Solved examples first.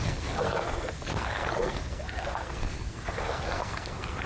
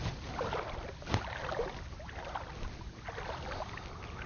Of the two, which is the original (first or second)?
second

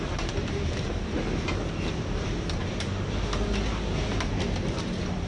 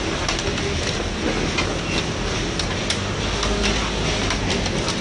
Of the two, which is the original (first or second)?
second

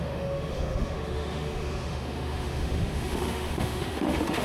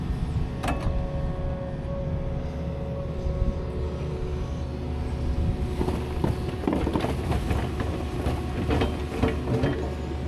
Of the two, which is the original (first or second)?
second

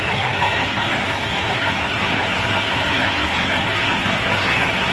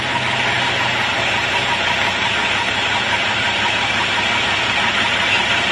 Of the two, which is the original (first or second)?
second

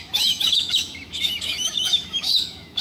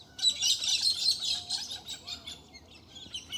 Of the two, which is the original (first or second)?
second